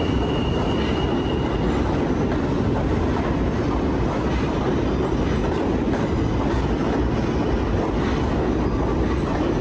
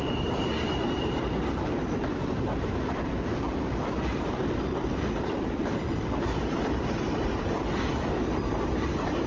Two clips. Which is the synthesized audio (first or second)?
second